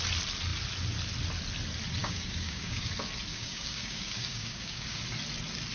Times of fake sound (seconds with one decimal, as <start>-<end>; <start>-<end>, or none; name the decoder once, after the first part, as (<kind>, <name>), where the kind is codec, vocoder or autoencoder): 2.0-2.9 (codec, DAC); 3.3-5.0